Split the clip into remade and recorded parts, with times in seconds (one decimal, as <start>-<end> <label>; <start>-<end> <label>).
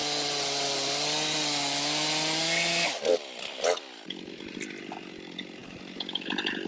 0.0-6.7 recorded